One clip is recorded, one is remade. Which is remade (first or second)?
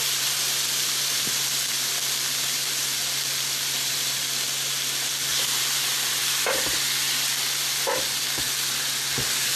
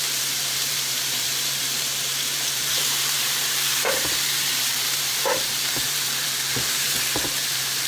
second